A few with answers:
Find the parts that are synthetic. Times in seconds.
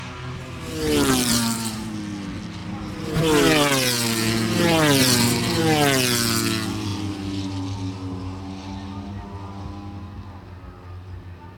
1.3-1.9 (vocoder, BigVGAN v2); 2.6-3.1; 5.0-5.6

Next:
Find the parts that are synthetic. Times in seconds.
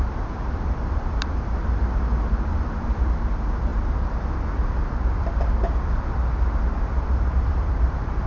0.0-3.7 (vocoder, BigVGAN v2); 6.8-8.3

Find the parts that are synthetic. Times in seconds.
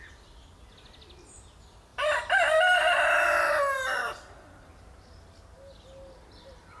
none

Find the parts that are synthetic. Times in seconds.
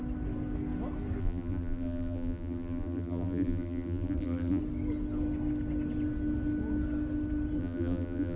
1.2-4.6 (vocoder, BigVGAN v2); 7.6-8.4